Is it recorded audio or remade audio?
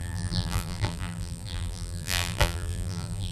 remade